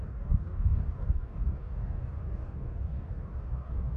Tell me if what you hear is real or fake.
fake